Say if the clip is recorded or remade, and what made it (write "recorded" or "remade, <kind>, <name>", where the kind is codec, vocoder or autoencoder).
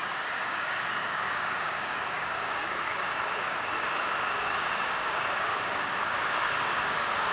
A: remade, codec, DAC